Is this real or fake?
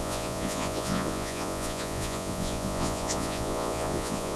fake